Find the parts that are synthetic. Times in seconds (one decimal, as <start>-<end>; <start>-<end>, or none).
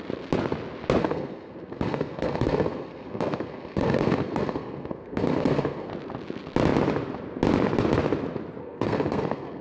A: 1.0-5.9; 8.6-9.6